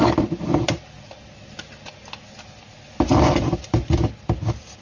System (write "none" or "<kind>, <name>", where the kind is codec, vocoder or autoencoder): none